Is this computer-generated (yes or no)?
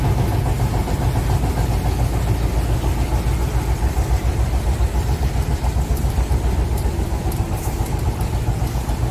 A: no